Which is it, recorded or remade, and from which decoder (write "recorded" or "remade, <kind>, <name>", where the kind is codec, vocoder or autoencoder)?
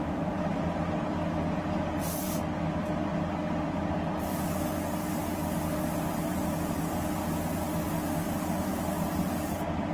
recorded